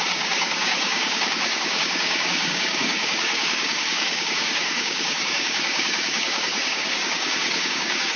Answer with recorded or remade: remade